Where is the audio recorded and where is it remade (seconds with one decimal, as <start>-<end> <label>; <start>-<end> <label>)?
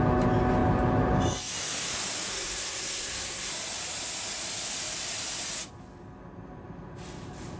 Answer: 0.0-2.3 recorded; 2.3-3.5 remade; 3.5-7.6 recorded